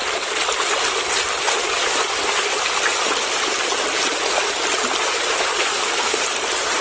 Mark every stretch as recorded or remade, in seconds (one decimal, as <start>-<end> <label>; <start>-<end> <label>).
0.0-5.7 recorded; 5.7-6.2 remade; 6.2-6.8 recorded